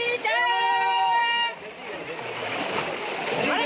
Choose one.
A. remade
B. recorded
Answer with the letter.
A